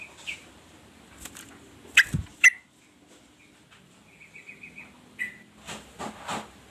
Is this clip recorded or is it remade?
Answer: recorded